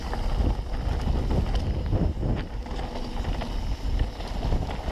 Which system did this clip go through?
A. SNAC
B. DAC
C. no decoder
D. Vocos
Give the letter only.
C